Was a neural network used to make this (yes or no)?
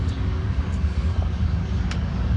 yes